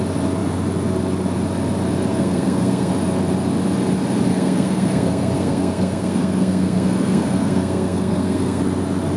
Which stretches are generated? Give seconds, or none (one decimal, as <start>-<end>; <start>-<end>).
2.1-2.9; 4.3-8.6